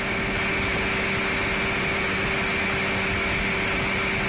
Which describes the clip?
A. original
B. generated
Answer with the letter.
A